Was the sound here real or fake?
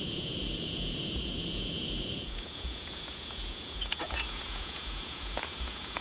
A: fake